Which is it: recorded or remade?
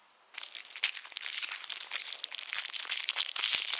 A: recorded